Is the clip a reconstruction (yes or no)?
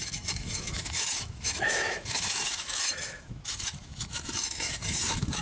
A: yes